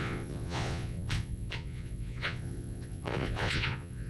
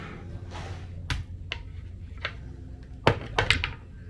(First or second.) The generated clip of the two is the first